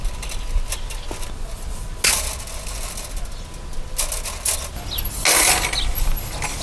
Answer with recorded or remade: recorded